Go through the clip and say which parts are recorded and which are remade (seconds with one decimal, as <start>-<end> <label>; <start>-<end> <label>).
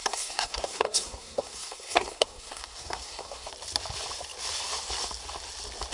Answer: 0.0-3.5 remade; 3.5-5.9 recorded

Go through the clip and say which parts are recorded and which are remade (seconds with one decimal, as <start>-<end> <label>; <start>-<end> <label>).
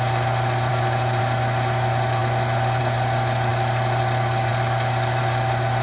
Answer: 0.0-5.8 recorded